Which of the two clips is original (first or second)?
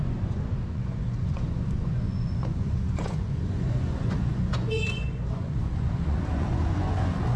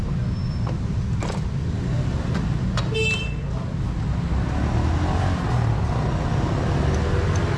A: second